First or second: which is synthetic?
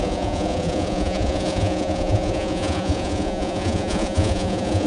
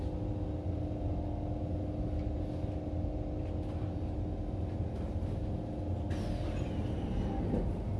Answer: first